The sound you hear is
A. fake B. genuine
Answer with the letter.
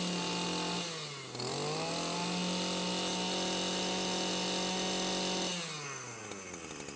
B